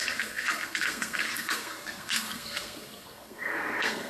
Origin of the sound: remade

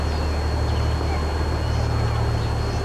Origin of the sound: recorded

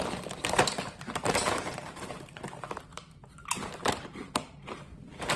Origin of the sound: remade